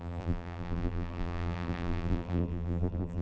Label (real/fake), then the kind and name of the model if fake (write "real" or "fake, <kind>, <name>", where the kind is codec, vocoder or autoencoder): fake, vocoder, BigVGAN v2